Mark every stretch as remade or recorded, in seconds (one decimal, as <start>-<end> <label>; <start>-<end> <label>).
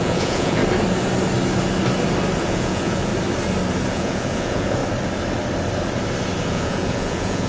0.0-0.6 remade; 0.6-2.4 recorded; 2.4-3.1 remade; 3.1-3.9 recorded; 3.9-4.8 remade; 4.8-6.4 recorded; 6.4-7.5 remade